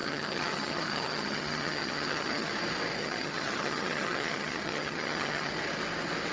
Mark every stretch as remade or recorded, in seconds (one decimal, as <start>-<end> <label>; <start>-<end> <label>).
0.0-2.5 remade; 2.5-3.0 recorded; 3.0-5.5 remade; 5.5-6.3 recorded